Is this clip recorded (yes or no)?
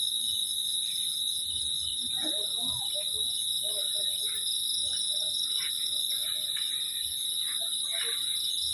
yes